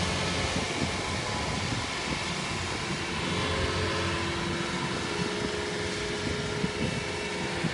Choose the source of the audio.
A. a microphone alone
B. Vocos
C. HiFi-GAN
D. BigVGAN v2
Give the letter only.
A